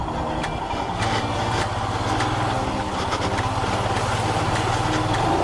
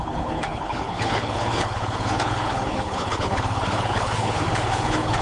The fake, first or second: second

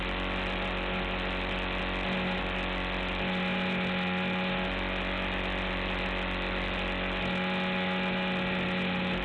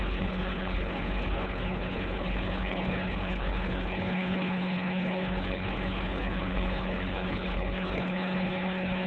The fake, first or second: second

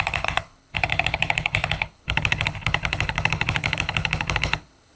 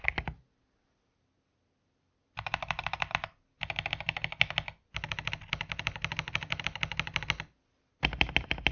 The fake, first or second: first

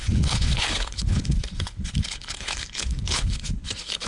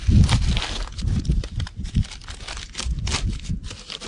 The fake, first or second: first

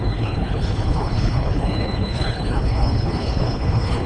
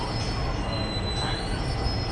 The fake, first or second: first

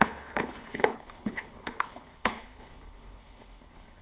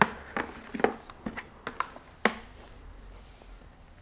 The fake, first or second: first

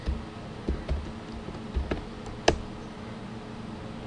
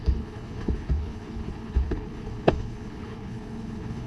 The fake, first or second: second